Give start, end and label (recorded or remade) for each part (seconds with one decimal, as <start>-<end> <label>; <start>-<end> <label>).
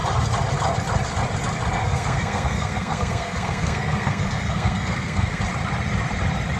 0.0-1.8 recorded; 1.8-5.4 remade; 5.4-6.6 recorded